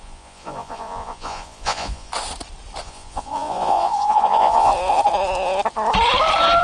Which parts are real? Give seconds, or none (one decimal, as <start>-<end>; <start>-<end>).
2.1-2.8; 4.7-6.6